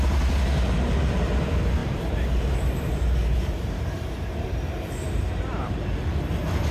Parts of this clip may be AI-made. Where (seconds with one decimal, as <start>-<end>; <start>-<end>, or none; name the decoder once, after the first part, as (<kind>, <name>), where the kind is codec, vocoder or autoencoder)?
1.8-5.8 (vocoder, BigVGAN v2)